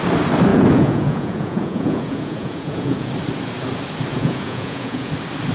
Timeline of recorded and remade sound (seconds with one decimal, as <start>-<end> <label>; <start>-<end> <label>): 0.0-0.5 recorded; 0.5-3.1 remade; 3.1-4.1 recorded; 4.1-5.1 remade; 5.1-5.5 recorded